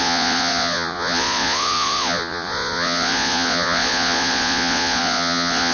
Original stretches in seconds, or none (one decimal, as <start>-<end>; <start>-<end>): none